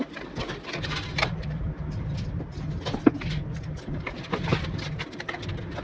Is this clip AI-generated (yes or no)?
no